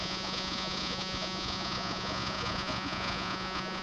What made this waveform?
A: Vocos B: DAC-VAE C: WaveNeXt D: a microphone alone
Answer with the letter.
A